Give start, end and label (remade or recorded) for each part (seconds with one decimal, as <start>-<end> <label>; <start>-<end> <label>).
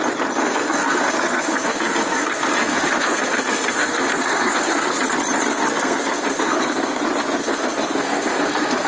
0.0-0.4 recorded; 0.4-5.0 remade; 5.0-5.5 recorded; 5.5-7.0 remade; 7.0-7.4 recorded; 7.4-8.9 remade